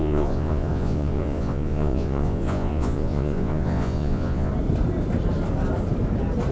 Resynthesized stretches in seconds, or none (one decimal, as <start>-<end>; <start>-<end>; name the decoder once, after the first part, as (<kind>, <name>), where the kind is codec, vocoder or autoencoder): 0.0-4.5 (vocoder, Vocos)